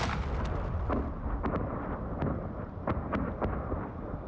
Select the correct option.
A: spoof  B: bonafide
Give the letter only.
B